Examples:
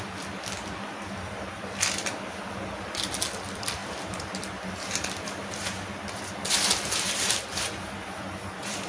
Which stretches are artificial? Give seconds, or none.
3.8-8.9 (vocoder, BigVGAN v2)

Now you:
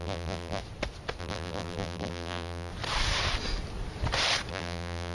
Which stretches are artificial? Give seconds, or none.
0.0-0.6 (vocoder, BigVGAN v2); 1.2-2.7; 4.5-5.1

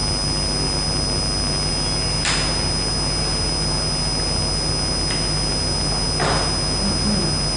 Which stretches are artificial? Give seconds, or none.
none

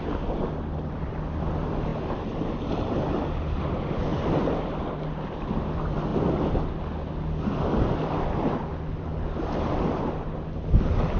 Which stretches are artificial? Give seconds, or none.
4.1-4.8 (vocoder, BigVGAN v2)

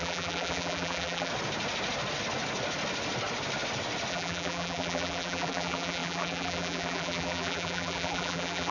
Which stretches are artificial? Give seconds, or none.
0.0-1.3 (vocoder, BigVGAN v2); 4.1-8.7

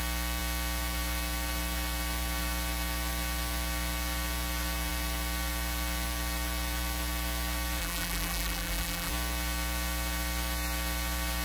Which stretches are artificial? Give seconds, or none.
7.8-9.1 (vocoder, BigVGAN v2)